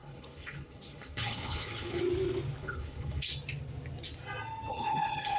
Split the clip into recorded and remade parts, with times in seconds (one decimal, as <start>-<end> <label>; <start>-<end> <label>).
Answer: 0.0-2.0 remade; 2.0-2.6 recorded; 2.6-3.3 remade; 3.3-4.7 recorded; 4.7-5.4 remade